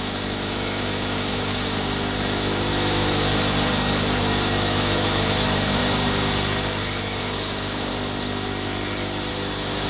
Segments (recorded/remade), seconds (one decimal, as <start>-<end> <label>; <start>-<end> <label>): 0.0-3.3 remade; 3.3-4.2 recorded; 4.2-5.8 remade; 5.8-7.2 recorded; 7.2-7.9 remade; 7.9-9.3 recorded; 9.3-9.9 remade